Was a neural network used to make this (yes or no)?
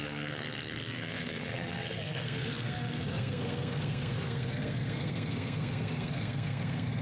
yes